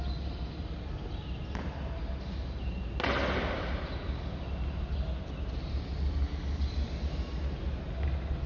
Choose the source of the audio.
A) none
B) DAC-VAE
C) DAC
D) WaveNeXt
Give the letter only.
A